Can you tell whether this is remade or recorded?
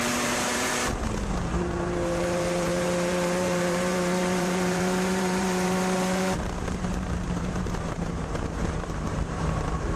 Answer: remade